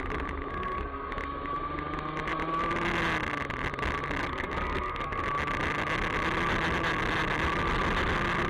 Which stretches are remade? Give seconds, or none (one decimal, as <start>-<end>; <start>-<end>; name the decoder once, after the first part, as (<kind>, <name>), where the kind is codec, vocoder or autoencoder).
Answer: 0.5-1.1 (codec, SNAC); 4.2-5.2